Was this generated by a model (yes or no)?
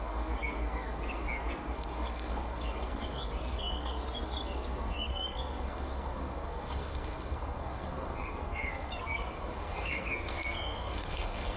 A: yes